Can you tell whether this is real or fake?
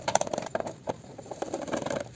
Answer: fake